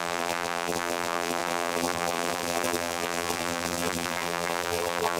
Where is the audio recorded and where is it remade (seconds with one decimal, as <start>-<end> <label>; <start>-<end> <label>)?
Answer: 0.0-5.2 remade